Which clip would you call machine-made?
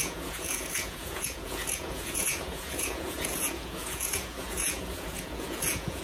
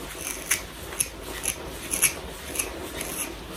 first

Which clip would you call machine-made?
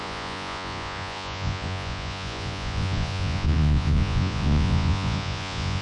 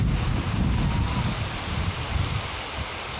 first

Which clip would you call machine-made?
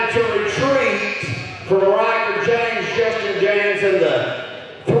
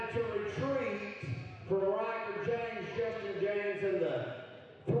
first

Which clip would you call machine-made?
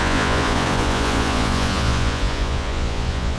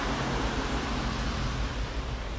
first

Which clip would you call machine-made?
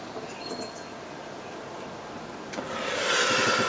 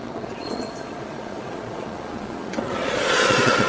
second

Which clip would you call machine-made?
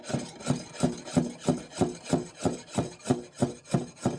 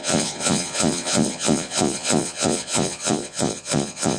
second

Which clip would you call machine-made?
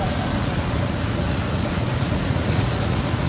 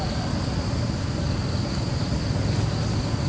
first